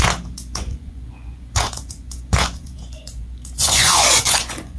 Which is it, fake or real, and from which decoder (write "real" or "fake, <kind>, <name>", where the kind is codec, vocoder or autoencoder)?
fake, vocoder, Vocos